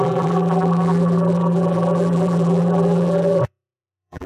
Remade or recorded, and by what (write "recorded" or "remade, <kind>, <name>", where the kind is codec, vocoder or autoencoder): remade, vocoder, BigVGAN v2